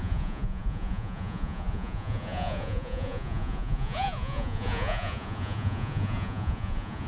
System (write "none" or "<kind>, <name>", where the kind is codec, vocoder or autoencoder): vocoder, Vocos